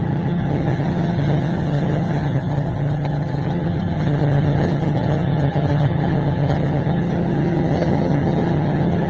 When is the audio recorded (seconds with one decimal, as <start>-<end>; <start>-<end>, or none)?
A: none